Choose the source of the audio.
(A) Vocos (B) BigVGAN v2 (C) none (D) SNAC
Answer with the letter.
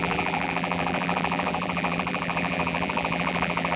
B